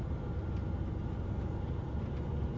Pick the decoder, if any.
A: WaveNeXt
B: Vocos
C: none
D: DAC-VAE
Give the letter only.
C